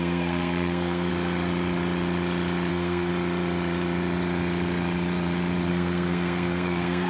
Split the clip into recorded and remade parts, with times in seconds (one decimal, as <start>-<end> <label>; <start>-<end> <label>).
0.0-1.1 remade; 1.1-2.7 recorded; 2.7-3.1 remade; 3.1-5.7 recorded; 5.7-7.1 remade